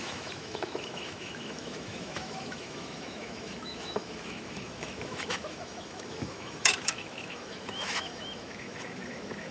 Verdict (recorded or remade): remade